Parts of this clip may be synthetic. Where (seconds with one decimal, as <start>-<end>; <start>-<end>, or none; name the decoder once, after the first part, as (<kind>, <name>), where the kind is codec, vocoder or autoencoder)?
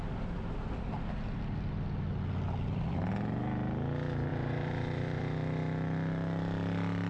4.3-5.2 (vocoder, BigVGAN v2)